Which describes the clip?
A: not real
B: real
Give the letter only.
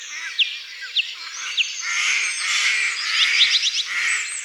B